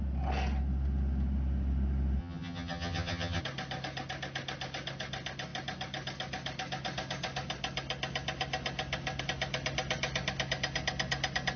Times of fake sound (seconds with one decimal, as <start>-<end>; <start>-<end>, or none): 2.2-3.4